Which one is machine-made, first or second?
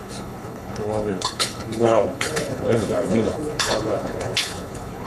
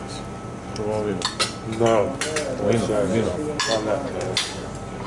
first